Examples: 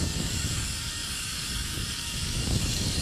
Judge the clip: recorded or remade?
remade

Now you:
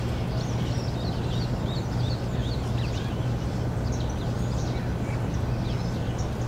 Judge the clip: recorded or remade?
recorded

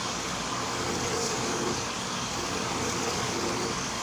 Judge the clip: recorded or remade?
remade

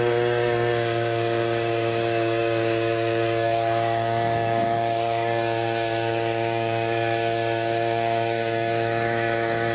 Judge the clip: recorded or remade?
remade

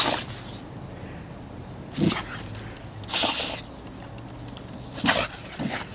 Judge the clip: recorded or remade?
recorded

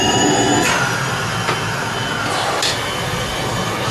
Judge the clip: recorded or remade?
recorded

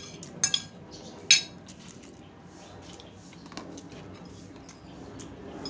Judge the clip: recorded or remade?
recorded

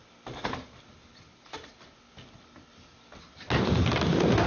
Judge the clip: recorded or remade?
recorded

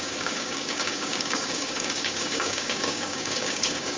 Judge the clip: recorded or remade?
remade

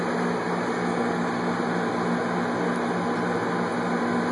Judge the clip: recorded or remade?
recorded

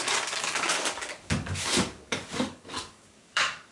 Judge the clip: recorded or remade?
remade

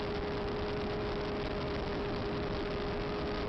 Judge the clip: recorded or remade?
recorded